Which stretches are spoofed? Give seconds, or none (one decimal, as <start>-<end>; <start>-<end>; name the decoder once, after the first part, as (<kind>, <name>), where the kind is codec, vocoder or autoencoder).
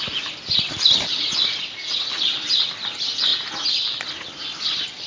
none